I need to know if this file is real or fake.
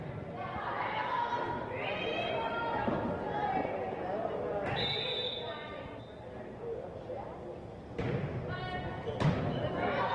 real